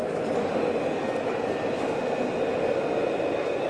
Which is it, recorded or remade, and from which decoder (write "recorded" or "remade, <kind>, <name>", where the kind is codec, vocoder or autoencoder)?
recorded